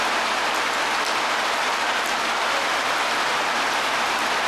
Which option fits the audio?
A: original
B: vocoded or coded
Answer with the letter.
A